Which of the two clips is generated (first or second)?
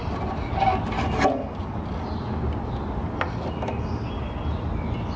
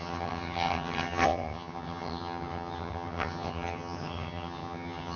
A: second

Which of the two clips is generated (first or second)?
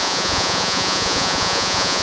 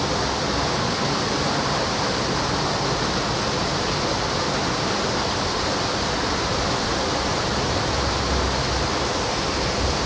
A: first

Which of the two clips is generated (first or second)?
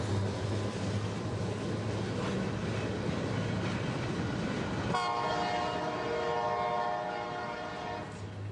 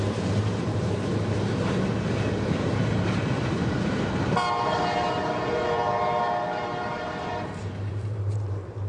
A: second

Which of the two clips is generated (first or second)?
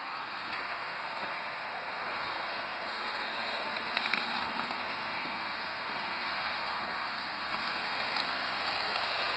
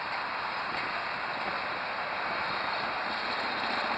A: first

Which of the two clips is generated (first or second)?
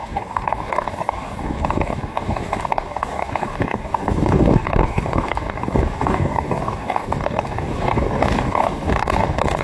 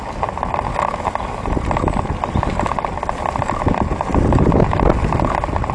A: first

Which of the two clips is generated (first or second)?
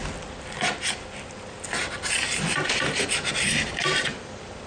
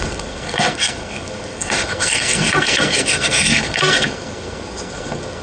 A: second